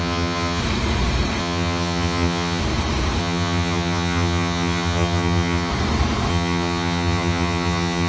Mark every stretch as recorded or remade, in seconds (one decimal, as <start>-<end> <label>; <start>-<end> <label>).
0.0-0.6 remade; 0.6-1.4 recorded; 1.4-2.6 remade; 2.6-3.2 recorded; 3.2-5.7 remade; 5.7-6.3 recorded; 6.3-8.1 remade